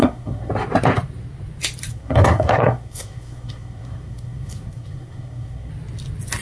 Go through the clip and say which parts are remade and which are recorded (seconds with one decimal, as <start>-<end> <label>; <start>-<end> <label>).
0.0-0.5 remade; 0.5-1.9 recorded; 1.9-5.7 remade; 5.7-6.4 recorded